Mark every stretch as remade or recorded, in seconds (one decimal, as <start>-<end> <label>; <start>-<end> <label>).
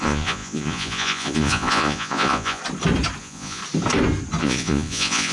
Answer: 0.0-2.6 remade; 2.6-3.2 recorded; 3.2-3.6 remade; 3.6-4.4 recorded; 4.4-5.3 remade